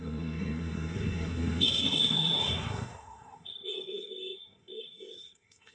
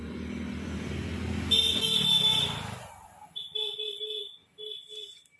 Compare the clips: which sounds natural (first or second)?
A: second